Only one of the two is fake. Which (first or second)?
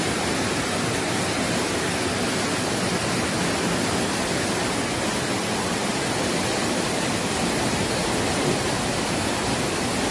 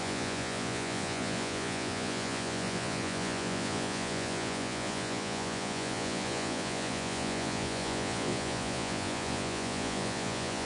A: second